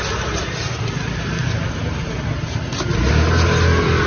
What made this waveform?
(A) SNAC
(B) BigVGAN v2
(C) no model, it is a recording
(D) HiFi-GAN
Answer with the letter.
C